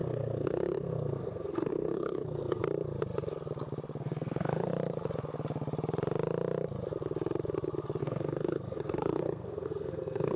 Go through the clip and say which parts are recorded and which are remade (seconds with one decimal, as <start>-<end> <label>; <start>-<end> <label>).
0.0-2.6 remade; 2.6-4.0 recorded; 4.0-4.7 remade; 4.7-8.0 recorded; 8.0-10.4 remade